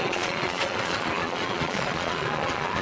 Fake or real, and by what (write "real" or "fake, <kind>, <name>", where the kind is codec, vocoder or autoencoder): fake, vocoder, Vocos